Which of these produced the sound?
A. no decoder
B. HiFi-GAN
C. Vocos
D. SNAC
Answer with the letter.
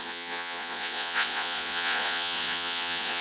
C